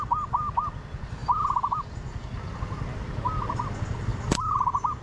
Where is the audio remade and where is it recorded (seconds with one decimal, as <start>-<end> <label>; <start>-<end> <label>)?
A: 0.0-1.2 recorded; 1.2-1.7 remade; 1.7-4.1 recorded; 4.1-5.0 remade

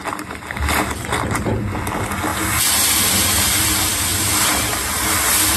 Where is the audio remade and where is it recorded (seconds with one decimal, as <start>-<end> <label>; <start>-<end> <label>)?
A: 0.0-5.6 recorded

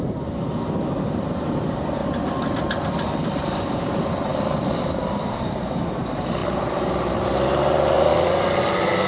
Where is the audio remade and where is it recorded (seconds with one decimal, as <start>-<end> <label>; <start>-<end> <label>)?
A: 0.0-2.0 remade; 2.0-3.2 recorded; 3.2-4.3 remade; 4.3-4.8 recorded; 4.8-8.1 remade; 8.1-9.1 recorded

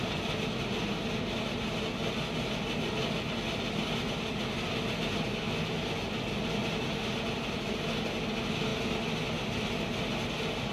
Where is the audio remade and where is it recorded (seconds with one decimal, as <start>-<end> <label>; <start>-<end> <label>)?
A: 0.0-10.7 recorded